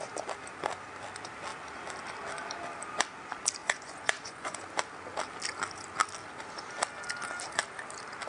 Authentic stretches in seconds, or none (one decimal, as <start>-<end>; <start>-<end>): 0.0-3.6; 4.6-8.3